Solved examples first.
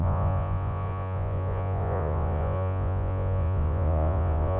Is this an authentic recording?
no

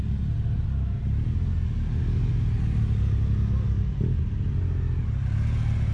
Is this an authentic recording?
yes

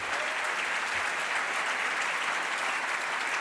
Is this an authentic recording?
yes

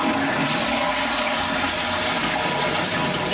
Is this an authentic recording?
yes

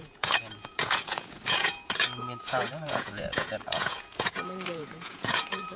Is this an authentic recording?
no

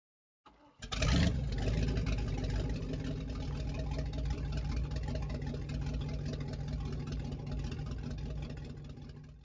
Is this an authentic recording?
yes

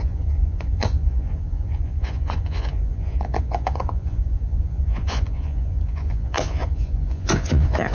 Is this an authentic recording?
no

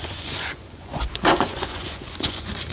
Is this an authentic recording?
no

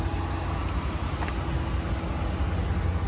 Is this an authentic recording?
yes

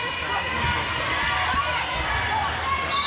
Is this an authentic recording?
yes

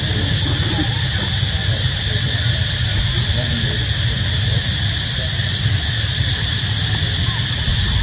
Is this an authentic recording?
yes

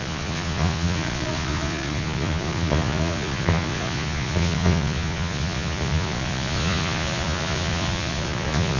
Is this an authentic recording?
no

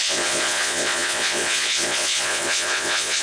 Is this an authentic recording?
no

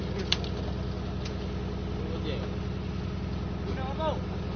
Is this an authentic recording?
yes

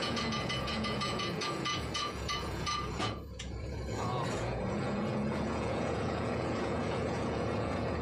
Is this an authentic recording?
no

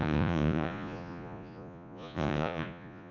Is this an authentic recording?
no